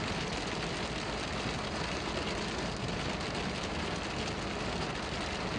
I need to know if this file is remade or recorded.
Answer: recorded